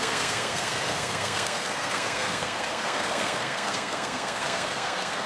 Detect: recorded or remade remade